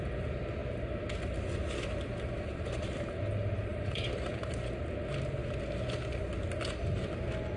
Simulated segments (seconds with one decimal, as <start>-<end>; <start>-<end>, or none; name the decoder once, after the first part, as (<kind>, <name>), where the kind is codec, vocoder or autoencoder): 3.7-4.3 (vocoder, BigVGAN v2)